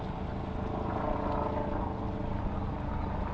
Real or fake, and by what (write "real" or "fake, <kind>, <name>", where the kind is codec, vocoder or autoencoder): real